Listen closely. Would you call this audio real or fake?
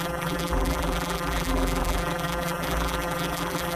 fake